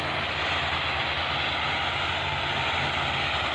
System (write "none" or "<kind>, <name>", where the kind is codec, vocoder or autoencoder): none